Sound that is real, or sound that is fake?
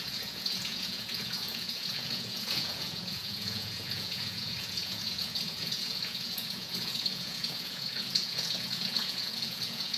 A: fake